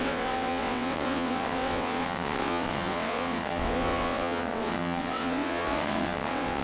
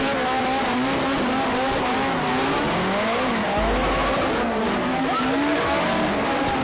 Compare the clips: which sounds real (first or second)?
second